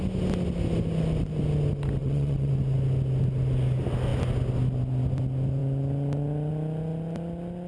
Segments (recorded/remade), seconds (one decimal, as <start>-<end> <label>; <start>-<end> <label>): 0.0-2.0 recorded; 2.0-2.5 remade; 2.5-7.7 recorded